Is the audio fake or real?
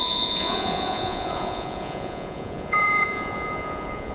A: fake